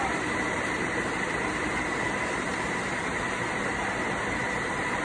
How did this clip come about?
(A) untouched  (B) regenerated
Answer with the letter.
B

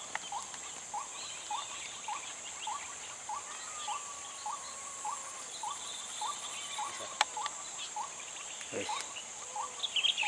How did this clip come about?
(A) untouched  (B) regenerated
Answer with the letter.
A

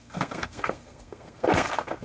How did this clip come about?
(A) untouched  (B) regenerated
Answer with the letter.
B